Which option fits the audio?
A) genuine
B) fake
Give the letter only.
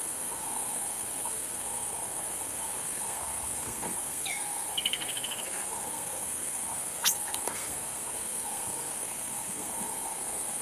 B